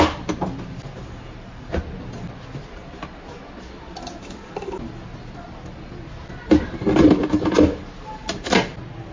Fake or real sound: real